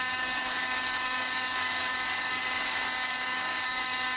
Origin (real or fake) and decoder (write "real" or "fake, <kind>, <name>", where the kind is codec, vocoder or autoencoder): fake, codec, DAC